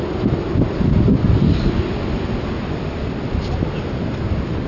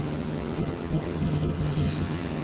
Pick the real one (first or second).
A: first